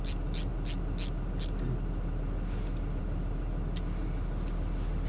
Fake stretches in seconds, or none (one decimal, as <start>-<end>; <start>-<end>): none